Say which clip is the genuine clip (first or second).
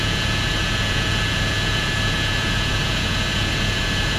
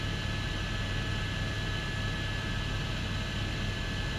second